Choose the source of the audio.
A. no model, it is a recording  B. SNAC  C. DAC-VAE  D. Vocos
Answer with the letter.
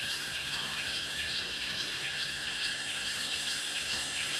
B